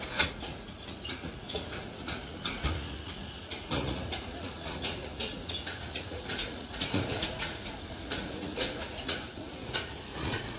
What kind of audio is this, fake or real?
fake